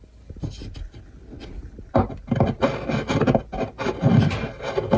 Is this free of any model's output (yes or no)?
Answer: yes